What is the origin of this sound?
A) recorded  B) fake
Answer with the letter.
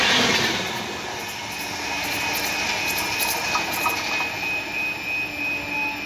A